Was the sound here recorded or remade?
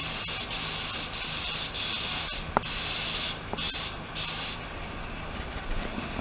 recorded